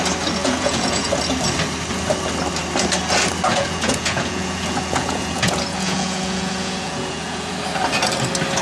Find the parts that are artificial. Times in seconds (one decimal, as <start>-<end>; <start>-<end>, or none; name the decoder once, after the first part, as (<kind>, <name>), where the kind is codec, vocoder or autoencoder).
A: 0.4-1.1 (vocoder, Vocos); 3.5-7.5